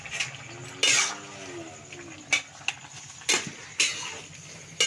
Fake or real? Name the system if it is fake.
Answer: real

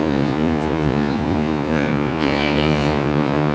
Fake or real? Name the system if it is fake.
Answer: fake, vocoder, Vocos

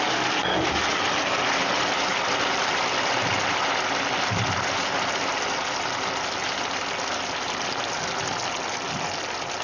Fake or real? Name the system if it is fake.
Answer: real